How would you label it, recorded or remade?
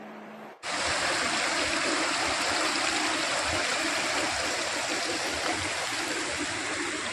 remade